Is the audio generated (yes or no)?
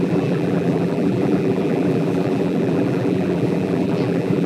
yes